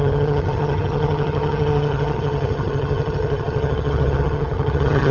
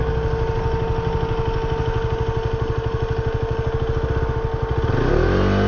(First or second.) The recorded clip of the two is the second